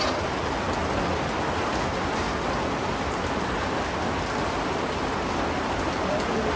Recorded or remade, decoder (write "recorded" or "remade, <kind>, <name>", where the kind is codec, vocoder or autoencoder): recorded